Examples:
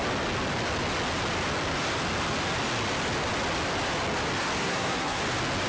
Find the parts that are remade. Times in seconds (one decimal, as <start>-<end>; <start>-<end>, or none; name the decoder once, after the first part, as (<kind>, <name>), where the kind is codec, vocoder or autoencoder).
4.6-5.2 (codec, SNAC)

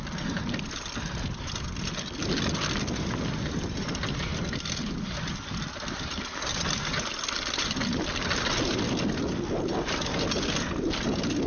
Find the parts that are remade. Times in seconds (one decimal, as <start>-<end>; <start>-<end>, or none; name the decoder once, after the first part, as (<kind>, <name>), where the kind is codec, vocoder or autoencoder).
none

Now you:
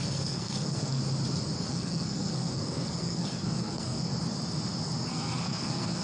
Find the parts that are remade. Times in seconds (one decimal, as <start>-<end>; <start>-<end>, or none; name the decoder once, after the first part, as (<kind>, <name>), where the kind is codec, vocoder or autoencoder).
0.0-1.0 (codec, SNAC); 1.7-4.1; 5.1-6.0